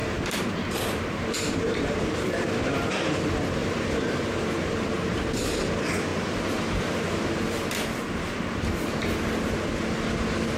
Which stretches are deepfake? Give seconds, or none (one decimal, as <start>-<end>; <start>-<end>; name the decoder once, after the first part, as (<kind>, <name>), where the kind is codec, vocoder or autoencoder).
0.0-2.0 (vocoder, BigVGAN v2); 3.6-4.8